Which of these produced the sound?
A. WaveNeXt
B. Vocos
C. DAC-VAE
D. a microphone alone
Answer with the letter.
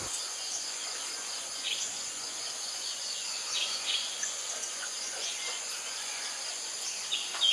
B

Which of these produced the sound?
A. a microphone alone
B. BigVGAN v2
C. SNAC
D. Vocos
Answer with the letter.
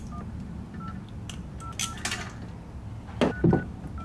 A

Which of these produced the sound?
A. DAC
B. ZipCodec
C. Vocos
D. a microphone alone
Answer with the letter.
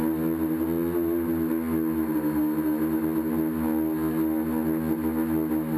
D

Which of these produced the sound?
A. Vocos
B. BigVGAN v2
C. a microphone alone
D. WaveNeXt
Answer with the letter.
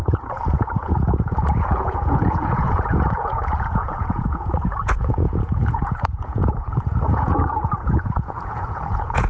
A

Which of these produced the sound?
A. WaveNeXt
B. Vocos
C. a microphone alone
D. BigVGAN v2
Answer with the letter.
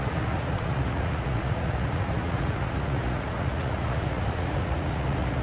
B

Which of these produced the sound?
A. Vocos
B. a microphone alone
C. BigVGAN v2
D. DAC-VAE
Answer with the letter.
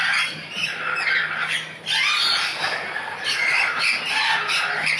B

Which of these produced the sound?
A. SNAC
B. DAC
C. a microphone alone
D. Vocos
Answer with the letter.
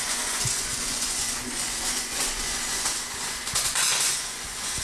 D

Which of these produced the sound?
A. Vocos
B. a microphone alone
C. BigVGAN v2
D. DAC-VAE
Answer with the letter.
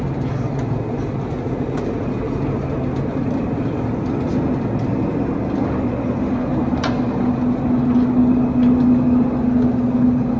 B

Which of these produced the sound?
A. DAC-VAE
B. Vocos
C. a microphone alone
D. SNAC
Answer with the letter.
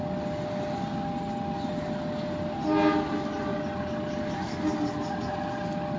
C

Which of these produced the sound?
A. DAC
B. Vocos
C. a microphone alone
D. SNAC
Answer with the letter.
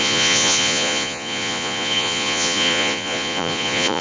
B